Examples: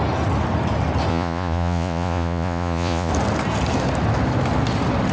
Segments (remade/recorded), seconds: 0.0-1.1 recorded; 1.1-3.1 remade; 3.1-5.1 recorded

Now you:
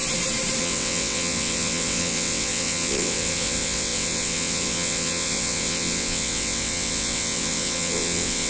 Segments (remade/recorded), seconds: 0.0-0.6 recorded; 0.6-8.5 remade

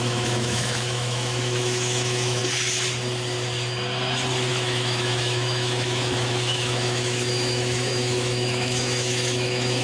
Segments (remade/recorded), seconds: 0.0-2.4 remade; 2.4-4.5 recorded; 4.5-9.8 remade

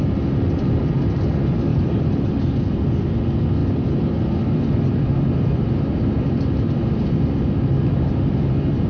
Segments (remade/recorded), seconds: 0.0-1.7 recorded; 1.7-2.3 remade; 2.3-3.6 recorded; 3.6-8.9 remade